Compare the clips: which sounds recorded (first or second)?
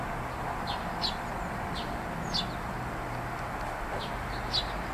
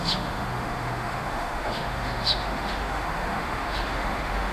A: first